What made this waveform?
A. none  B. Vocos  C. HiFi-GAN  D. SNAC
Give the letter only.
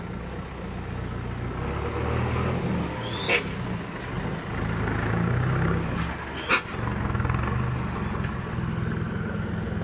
A